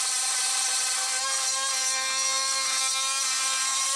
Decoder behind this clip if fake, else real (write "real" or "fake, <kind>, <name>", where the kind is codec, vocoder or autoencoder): real